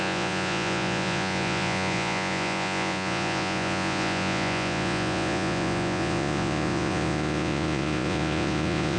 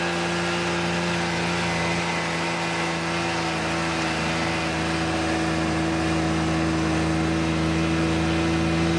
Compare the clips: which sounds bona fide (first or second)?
second